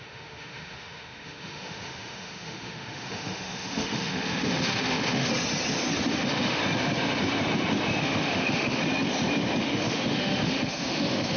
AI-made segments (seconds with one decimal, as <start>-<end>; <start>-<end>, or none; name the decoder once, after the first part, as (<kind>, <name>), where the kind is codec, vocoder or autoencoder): 0.0-5.3 (autoencoder, DAC-VAE); 6.1-6.6; 8.0-8.8; 9.6-11.4